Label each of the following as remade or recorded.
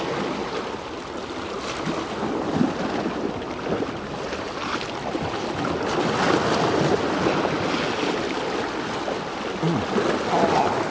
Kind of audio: recorded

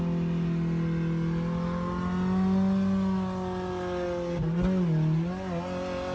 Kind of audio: recorded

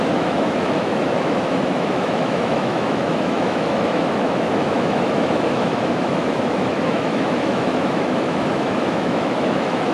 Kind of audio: remade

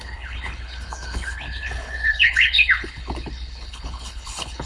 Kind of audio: remade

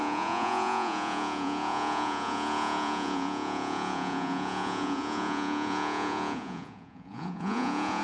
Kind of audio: remade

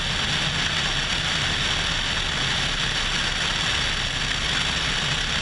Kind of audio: recorded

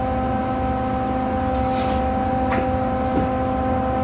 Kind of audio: recorded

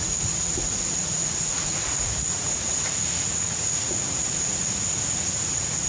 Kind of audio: remade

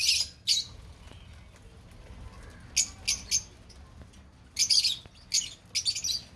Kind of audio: recorded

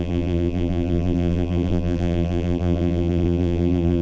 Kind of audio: remade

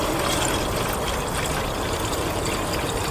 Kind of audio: recorded